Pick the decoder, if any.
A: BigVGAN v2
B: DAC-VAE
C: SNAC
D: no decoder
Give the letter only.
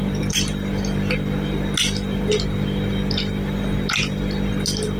D